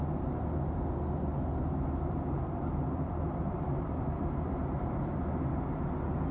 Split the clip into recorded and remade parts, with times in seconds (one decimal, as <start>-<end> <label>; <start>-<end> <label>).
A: 0.0-1.3 recorded; 1.3-5.1 remade; 5.1-6.3 recorded